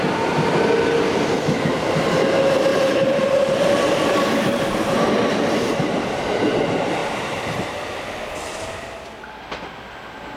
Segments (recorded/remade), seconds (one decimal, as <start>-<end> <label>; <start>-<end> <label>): 0.0-2.7 recorded; 2.7-5.0 remade; 5.0-7.0 recorded; 7.0-9.0 remade; 9.0-10.4 recorded